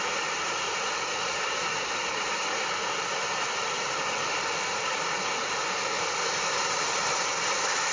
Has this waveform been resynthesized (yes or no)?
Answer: yes